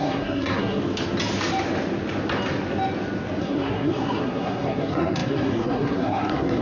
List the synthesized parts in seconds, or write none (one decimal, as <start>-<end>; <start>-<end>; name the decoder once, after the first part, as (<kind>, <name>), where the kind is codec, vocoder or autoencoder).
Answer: 0.0-0.8 (codec, SNAC); 3.4-6.6